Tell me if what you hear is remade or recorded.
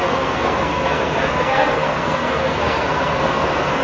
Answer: remade